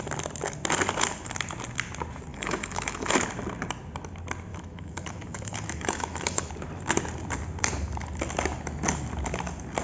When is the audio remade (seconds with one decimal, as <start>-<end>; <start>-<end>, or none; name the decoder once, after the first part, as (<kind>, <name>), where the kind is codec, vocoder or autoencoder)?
2.3-3.1 (autoencoder, DAC-VAE); 4.5-6.5